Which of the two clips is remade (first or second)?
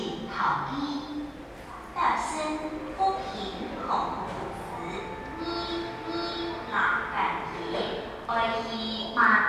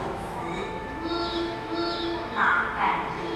second